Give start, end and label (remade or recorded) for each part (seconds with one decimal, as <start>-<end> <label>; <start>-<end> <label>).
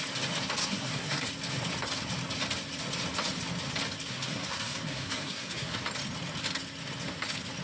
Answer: 0.0-0.6 recorded; 0.6-1.3 remade; 1.3-4.1 recorded; 4.1-5.8 remade; 5.8-7.6 recorded